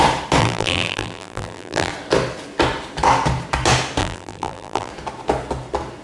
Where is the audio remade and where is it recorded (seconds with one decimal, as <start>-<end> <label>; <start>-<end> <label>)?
0.0-0.4 recorded; 0.4-1.9 remade; 1.9-4.0 recorded; 4.0-4.9 remade; 4.9-6.0 recorded